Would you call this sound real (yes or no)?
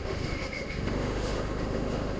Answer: no